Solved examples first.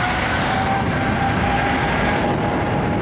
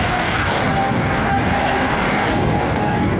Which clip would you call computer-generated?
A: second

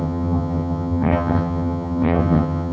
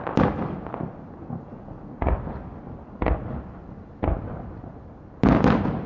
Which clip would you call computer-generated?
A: first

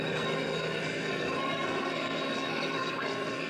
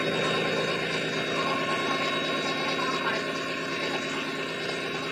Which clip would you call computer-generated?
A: first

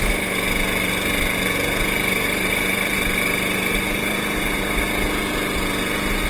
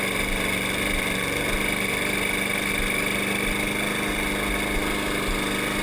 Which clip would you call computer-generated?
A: first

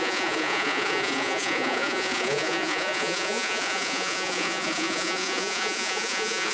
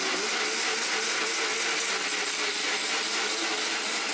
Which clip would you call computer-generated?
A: first